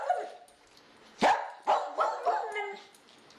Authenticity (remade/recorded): recorded